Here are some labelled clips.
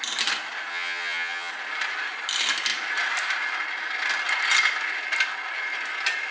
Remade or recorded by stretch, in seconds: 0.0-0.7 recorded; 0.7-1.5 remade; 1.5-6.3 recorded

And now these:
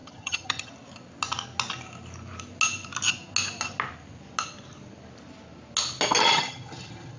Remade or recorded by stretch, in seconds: 0.0-0.7 remade; 0.7-6.2 recorded; 6.2-7.2 remade

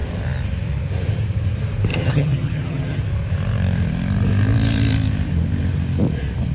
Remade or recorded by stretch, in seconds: 0.0-1.9 recorded; 1.9-3.0 remade; 3.0-6.5 recorded

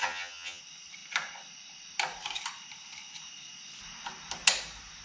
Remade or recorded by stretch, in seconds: 0.0-0.6 remade; 0.6-5.0 recorded

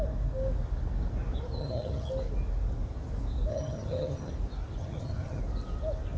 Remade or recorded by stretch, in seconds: 0.0-1.6 recorded; 1.6-2.1 remade; 2.1-3.5 recorded; 3.5-4.3 remade; 4.3-4.8 recorded; 4.8-5.4 remade; 5.4-6.2 recorded